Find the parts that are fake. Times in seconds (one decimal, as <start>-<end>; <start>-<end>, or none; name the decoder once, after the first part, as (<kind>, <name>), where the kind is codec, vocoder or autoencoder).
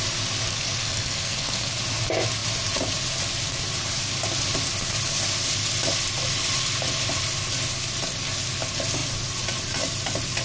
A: 0.5-1.7 (codec, SNAC)